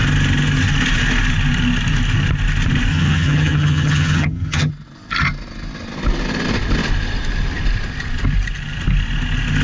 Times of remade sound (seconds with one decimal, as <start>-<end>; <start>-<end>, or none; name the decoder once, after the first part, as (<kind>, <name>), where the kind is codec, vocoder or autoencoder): 2.9-4.7 (vocoder, HiFi-GAN)